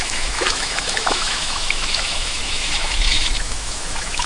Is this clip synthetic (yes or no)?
yes